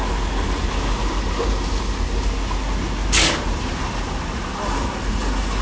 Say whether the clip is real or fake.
real